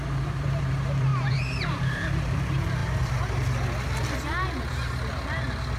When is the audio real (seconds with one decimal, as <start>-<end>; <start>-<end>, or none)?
2.8-5.8